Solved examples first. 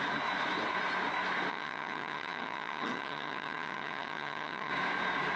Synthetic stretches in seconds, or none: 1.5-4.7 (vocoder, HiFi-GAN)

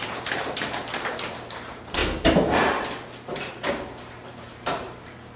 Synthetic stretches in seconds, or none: 0.0-2.0 (vocoder, BigVGAN v2); 3.7-5.4

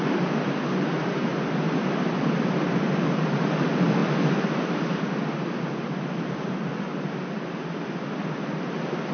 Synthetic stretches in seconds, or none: 0.0-1.3 (vocoder, BigVGAN v2); 2.0-9.1

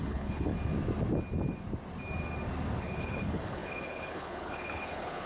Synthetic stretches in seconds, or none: 0.0-0.5 (codec, HILCodec); 2.8-5.3

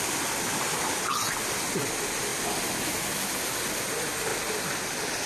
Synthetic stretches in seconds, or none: 0.6-1.7 (vocoder, BigVGAN v2); 2.3-3.3

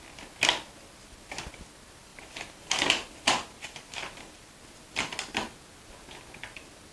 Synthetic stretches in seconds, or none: 2.1-4.4 (vocoder, BigVGAN v2)

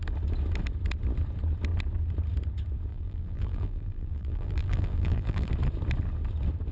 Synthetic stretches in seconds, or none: 2.9-5.5 (vocoder, BigVGAN v2)

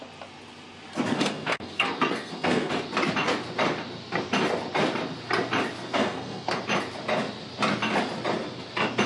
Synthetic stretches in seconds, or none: 1.1-2.7 (codec, SNAC); 5.8-6.6